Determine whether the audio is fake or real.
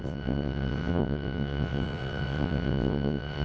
fake